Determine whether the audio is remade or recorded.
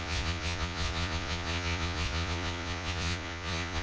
remade